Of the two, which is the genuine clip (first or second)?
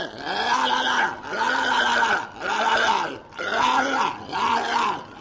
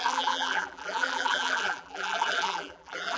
first